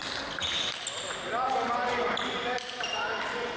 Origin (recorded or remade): recorded